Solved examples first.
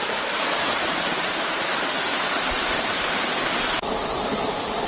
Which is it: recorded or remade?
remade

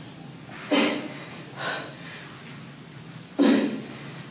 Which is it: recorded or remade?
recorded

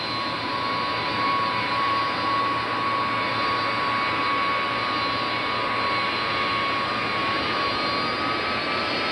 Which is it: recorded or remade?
recorded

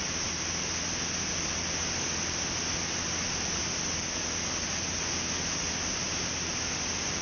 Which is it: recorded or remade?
recorded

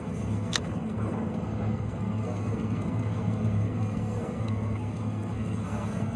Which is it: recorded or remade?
remade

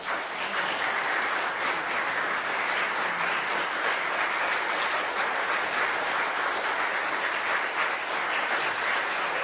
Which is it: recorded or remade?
recorded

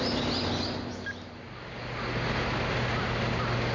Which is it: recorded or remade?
recorded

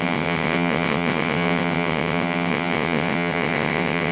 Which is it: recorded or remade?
remade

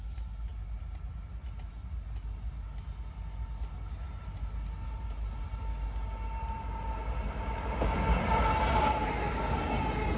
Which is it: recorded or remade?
recorded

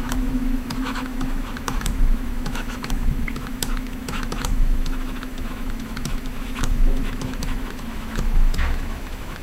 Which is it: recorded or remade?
remade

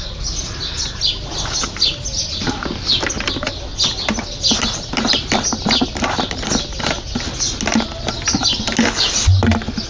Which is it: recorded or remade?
recorded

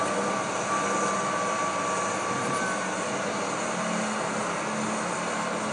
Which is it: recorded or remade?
recorded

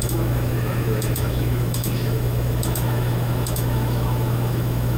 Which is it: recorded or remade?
remade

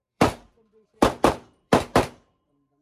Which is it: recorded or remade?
remade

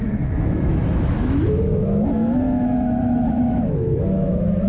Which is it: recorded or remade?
remade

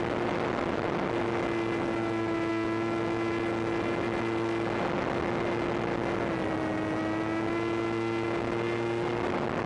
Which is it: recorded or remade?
recorded